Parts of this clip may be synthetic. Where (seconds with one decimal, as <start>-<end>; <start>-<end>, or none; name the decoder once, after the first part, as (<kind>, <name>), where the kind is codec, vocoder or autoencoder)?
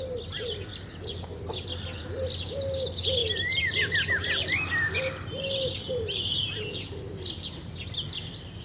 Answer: none